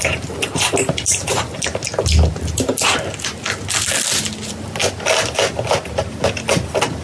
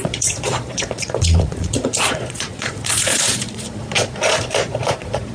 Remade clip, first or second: second